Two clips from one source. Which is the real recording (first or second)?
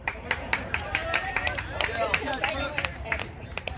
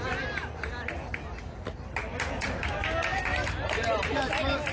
second